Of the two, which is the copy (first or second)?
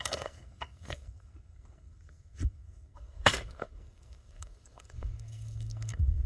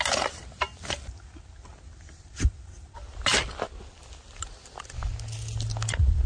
first